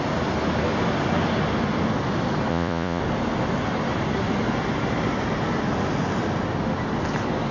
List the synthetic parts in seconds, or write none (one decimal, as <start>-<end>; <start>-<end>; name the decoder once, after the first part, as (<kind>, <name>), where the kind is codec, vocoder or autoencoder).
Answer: 2.5-3.0 (vocoder, Vocos)